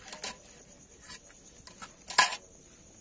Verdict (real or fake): real